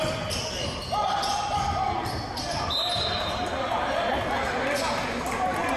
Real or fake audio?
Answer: real